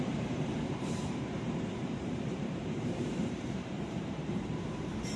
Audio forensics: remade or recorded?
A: remade